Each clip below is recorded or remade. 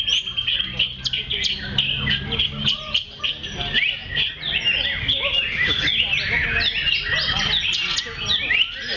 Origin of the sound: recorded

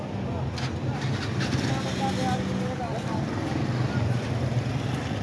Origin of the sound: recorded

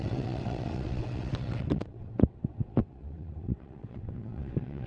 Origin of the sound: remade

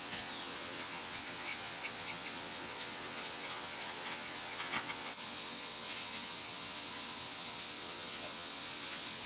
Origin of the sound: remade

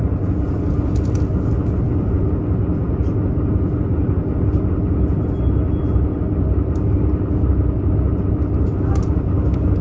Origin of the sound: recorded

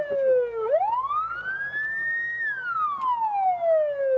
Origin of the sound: recorded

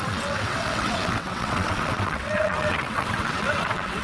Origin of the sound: remade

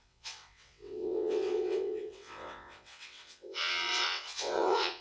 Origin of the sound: remade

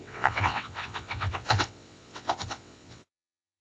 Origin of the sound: remade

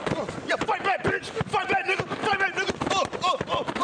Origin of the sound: recorded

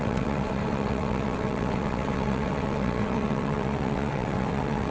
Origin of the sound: remade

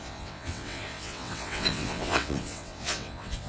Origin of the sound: remade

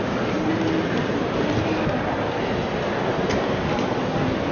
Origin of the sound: recorded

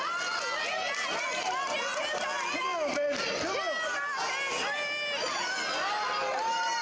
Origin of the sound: recorded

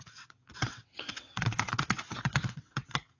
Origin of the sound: remade